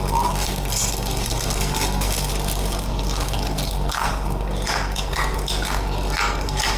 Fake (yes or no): yes